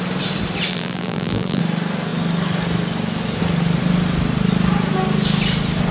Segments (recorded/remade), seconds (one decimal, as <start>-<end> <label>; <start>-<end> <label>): 0.0-0.7 recorded; 0.7-1.6 remade; 1.6-5.9 recorded